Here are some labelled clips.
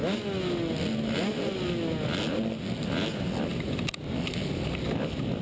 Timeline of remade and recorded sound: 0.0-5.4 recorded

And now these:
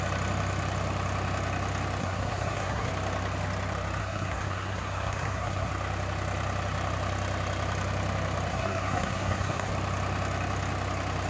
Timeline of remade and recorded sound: 0.0-2.0 recorded; 2.0-2.9 remade; 2.9-4.0 recorded; 4.0-5.7 remade; 5.7-8.5 recorded; 8.5-9.7 remade; 9.7-11.3 recorded

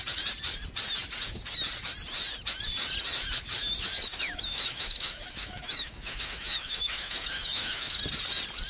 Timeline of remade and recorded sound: 0.0-4.1 recorded; 4.1-8.0 remade; 8.0-8.7 recorded